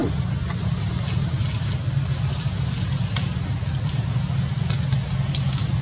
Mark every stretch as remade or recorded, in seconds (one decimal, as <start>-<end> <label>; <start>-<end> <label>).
0.0-5.8 recorded